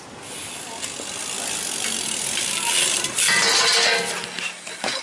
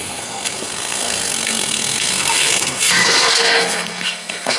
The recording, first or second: first